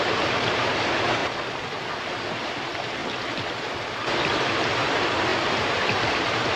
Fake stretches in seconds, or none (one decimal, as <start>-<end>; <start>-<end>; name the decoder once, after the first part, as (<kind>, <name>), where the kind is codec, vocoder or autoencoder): 0.0-1.2 (vocoder, BigVGAN v2); 2.1-3.0; 3.5-6.6